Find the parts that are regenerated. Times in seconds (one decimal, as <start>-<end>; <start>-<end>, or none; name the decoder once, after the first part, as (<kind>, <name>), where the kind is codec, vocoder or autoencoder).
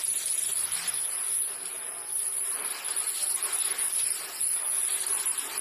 0.0-5.6 (vocoder, BigVGAN v2)